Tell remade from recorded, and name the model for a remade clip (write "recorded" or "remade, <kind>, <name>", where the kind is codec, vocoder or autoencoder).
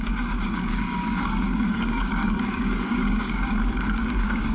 remade, codec, DAC